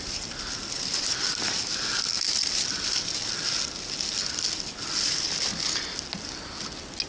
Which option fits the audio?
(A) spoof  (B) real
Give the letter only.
B